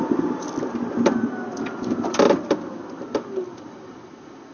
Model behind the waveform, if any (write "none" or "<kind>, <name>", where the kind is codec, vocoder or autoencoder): vocoder, BigVGAN v2